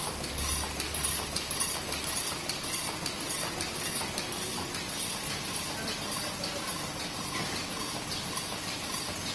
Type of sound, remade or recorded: recorded